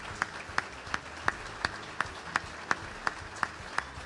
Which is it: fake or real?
real